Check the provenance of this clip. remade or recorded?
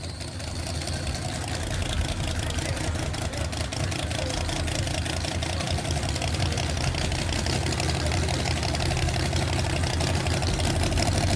recorded